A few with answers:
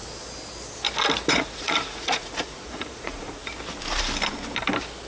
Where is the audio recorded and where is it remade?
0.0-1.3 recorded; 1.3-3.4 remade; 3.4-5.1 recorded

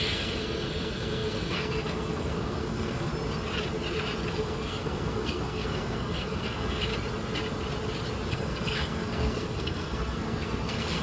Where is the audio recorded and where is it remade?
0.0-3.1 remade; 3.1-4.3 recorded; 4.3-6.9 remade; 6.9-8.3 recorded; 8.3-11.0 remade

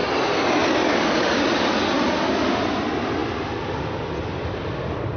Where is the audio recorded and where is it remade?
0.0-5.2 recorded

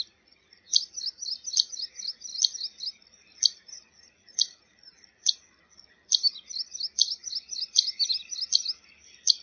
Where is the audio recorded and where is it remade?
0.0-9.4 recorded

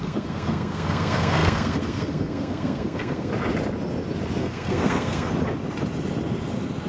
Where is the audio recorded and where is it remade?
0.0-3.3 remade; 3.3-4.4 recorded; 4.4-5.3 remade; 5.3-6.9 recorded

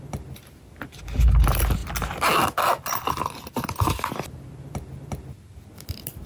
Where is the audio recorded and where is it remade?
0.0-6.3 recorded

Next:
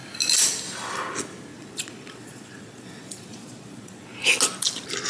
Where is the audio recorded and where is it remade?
0.0-1.5 recorded; 1.5-4.2 remade; 4.2-5.1 recorded